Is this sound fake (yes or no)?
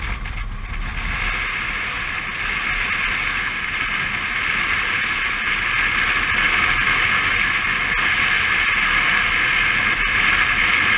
no